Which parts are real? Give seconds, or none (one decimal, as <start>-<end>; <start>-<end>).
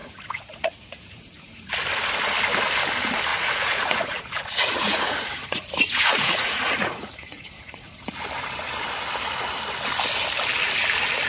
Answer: 1.7-3.3; 8.1-11.3